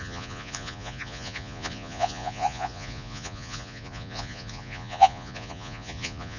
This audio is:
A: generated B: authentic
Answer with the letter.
A